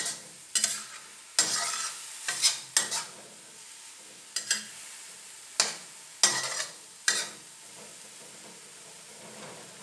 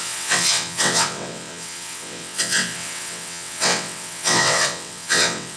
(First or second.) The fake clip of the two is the second